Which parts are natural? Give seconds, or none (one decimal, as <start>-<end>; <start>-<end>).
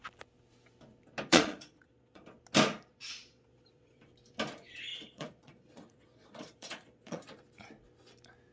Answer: 0.0-1.3; 2.2-2.9; 4.0-4.9; 7.2-8.5